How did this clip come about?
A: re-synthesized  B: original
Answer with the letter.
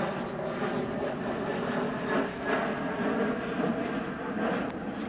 B